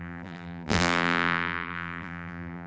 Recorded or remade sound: remade